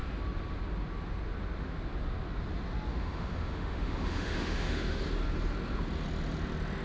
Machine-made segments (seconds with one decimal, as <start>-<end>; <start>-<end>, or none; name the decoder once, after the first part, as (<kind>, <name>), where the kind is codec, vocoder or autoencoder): 2.9-5.0 (autoencoder, DAC-VAE)